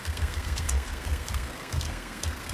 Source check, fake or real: fake